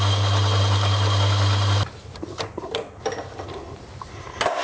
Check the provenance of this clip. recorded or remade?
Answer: recorded